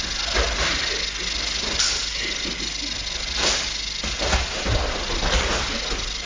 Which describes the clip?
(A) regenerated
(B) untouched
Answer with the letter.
B